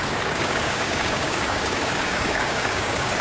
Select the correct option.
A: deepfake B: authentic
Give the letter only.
A